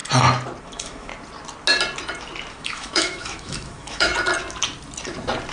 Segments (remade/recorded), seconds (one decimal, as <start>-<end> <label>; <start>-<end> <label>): 0.0-0.6 recorded; 0.6-1.1 remade; 1.1-2.5 recorded; 2.5-4.1 remade; 4.1-5.5 recorded